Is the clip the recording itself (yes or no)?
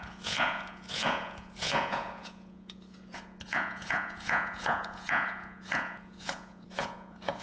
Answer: no